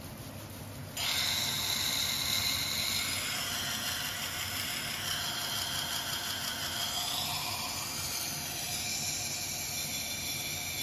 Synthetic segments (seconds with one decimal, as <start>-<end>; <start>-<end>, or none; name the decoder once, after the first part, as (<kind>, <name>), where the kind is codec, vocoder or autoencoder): none